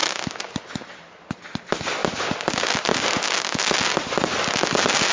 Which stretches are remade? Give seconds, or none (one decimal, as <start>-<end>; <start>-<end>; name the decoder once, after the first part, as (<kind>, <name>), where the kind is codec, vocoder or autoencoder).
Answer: none